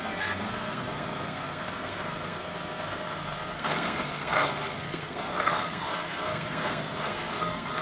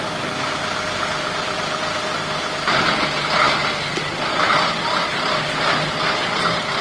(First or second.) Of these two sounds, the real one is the second